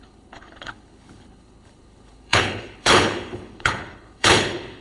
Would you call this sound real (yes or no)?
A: no